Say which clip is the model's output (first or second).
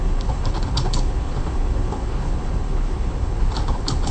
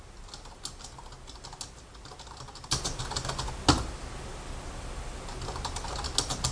first